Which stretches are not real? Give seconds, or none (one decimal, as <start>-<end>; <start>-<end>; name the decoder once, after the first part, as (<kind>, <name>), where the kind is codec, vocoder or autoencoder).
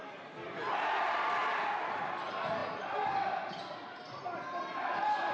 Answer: none